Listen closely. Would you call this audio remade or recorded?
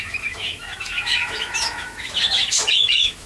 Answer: remade